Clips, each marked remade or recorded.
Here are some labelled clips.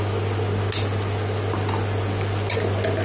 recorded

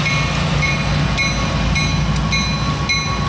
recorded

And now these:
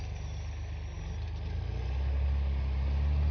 recorded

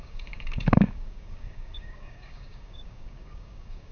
remade